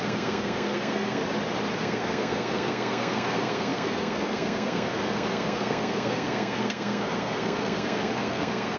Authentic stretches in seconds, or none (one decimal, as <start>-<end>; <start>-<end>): 1.2-1.8